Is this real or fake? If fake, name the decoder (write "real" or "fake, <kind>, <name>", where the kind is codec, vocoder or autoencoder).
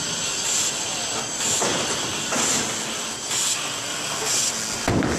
real